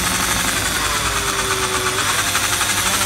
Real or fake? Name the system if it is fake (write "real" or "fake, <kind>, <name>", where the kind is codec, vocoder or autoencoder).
real